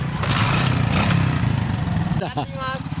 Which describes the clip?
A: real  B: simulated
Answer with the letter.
A